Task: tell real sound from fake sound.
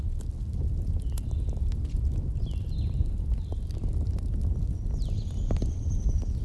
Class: real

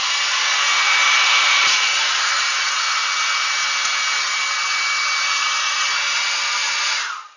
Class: real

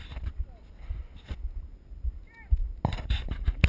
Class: real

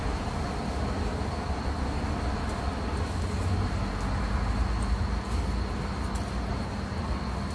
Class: real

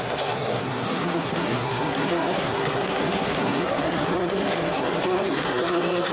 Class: fake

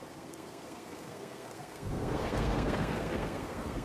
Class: fake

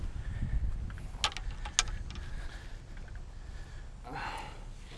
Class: real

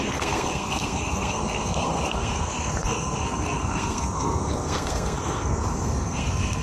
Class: fake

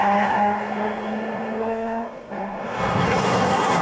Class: fake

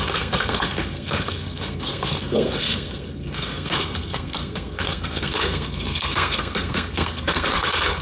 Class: fake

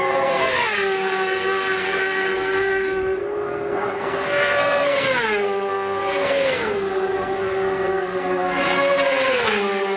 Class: fake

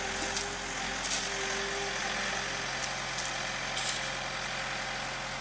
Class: real